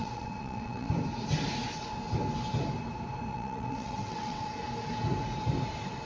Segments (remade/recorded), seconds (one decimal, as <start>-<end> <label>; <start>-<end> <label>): 0.0-0.9 remade; 0.9-3.3 recorded; 3.3-4.5 remade; 4.5-6.1 recorded